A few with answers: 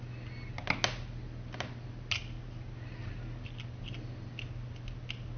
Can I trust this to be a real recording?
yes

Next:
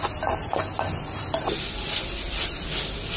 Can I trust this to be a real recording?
yes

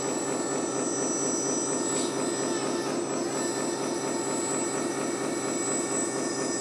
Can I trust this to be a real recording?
yes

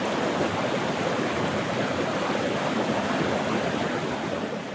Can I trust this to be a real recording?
yes